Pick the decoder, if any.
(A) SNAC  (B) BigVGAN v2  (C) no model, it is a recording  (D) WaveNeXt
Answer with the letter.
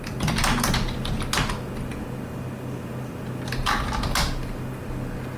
C